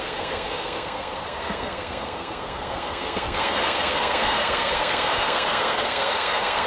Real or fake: fake